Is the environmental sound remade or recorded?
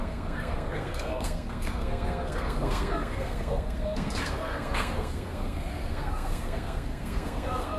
remade